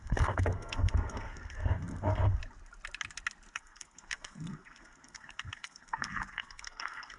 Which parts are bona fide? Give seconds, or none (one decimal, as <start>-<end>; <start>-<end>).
2.4-3.5